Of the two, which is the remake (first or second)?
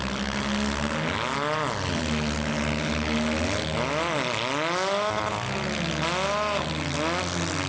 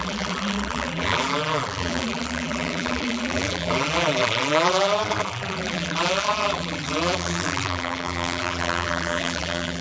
second